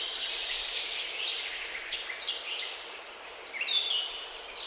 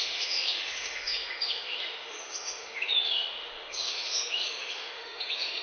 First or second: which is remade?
second